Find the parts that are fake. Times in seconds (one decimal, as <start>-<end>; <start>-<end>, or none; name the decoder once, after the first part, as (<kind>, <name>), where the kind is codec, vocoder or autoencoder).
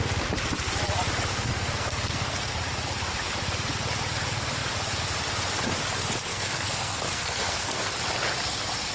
1.3-2.5 (codec, SNAC); 6.3-7.9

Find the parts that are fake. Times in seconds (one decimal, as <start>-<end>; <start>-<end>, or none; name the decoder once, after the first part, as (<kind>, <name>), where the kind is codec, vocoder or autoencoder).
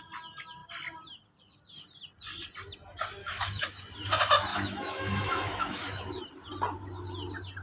3.2-3.8 (autoencoder, DAC-VAE); 4.5-6.2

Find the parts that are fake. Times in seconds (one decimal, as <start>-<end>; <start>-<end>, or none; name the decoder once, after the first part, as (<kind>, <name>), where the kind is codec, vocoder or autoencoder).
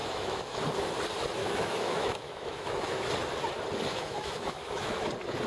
0.0-0.6 (autoencoder, DAC-VAE); 1.4-3.1; 3.9-5.1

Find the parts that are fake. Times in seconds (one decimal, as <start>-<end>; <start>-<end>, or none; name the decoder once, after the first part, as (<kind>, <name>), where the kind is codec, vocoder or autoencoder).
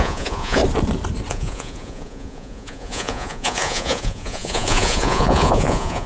0.0-0.6 (vocoder, Vocos); 1.3-6.1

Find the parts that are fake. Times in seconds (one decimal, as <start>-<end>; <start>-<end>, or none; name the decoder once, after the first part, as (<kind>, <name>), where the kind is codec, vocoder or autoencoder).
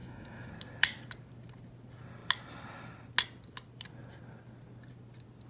0.0-0.5 (autoencoder, DAC-VAE)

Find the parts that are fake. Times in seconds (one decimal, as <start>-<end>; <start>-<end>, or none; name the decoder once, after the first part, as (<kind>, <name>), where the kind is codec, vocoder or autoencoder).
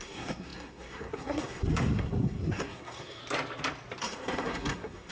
0.0-3.2 (codec, SNAC); 4.0-5.1